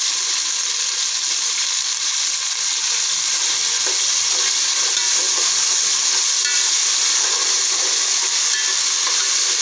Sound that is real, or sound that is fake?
real